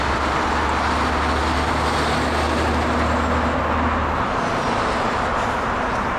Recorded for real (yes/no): yes